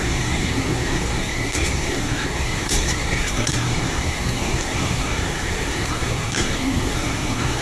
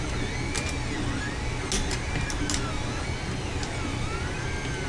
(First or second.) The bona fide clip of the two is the second